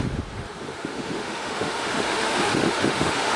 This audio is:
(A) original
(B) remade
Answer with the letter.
B